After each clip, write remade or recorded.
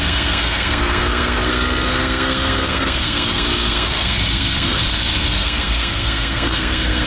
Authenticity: remade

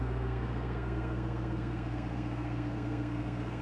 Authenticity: remade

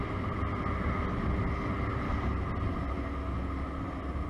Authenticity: recorded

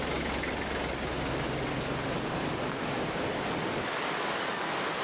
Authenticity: recorded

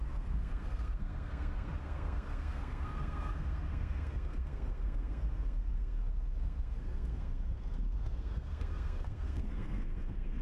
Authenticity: remade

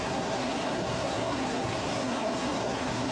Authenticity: remade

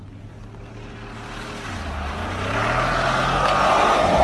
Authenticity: recorded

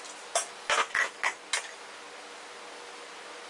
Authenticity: recorded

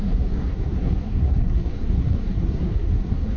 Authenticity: remade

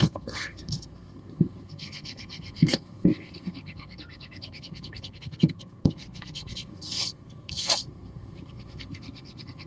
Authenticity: remade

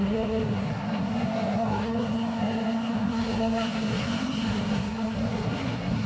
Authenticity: remade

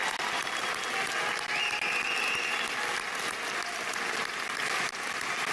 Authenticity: recorded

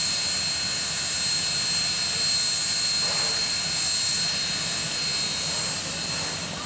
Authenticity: recorded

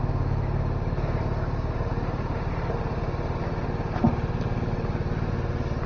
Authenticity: recorded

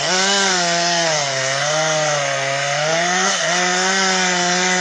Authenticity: remade